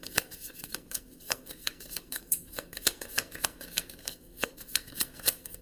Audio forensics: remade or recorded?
remade